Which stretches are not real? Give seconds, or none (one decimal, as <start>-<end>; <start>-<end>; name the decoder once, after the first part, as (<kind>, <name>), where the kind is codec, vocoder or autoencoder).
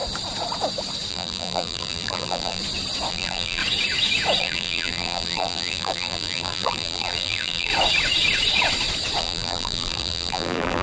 1.1-2.6 (vocoder, BigVGAN v2); 3.1-3.6; 4.4-7.7; 9.2-10.8